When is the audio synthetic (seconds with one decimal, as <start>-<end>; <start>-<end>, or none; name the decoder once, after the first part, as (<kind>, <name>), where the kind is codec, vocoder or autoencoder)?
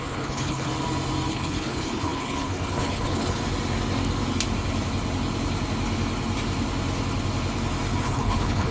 0.0-0.7 (codec, HILCodec); 1.3-3.4; 8.0-8.7